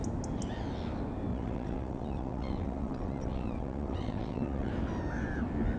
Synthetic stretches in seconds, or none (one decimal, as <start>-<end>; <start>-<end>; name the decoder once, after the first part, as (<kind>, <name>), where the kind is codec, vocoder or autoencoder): 1.3-4.7 (vocoder, WaveNeXt)